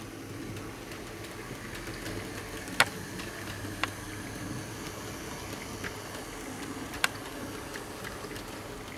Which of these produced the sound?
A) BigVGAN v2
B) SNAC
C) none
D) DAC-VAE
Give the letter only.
C